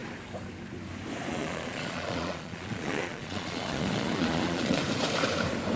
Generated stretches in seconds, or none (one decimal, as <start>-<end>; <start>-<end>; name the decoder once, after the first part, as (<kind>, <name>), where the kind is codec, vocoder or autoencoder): 1.3-4.8 (vocoder, Vocos)